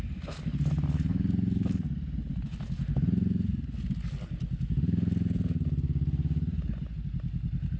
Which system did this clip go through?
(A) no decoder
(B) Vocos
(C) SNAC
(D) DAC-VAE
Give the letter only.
A